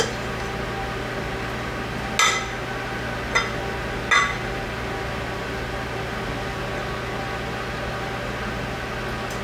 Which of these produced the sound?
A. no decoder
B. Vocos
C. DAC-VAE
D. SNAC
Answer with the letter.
A